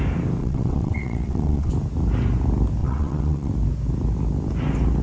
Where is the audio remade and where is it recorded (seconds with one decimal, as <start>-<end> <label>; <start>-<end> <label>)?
0.0-0.4 recorded; 0.4-1.7 remade; 1.7-2.8 recorded; 2.8-3.5 remade; 3.5-5.0 recorded